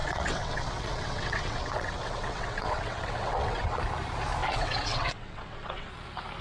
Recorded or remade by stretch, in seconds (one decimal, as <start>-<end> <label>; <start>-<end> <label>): 0.0-3.8 remade; 3.8-4.4 recorded; 4.4-5.9 remade; 5.9-6.4 recorded

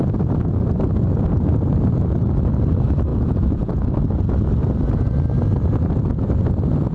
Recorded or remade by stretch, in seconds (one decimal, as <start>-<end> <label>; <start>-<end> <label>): 0.0-3.1 recorded; 3.1-3.8 remade; 3.8-6.9 recorded

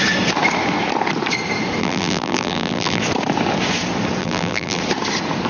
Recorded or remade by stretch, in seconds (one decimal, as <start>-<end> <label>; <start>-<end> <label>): 0.0-1.8 recorded; 1.8-3.0 remade; 3.0-4.2 recorded; 4.2-4.8 remade; 4.8-5.5 recorded

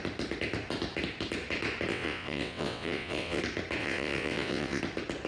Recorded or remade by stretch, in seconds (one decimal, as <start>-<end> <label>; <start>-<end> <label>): 0.0-1.9 recorded; 1.9-3.4 remade; 3.4-3.8 recorded; 3.8-4.8 remade; 4.8-5.3 recorded

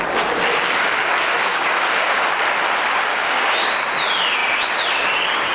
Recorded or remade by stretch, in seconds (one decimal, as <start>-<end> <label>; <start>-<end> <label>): 0.0-1.5 recorded; 1.5-2.3 remade; 2.3-3.1 recorded; 3.1-3.7 remade; 3.7-5.5 recorded

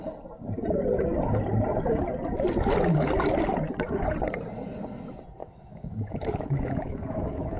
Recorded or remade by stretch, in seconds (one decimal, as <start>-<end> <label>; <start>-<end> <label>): 0.0-5.4 recorded; 5.4-7.6 remade

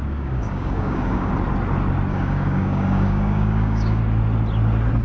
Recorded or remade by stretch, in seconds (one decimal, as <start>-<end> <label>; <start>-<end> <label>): 0.0-1.3 remade; 1.3-2.1 recorded; 2.1-4.0 remade; 4.0-5.0 recorded

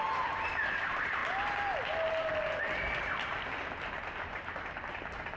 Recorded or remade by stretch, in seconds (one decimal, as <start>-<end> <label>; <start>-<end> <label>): 0.0-1.2 remade; 1.2-4.0 recorded; 4.0-5.4 remade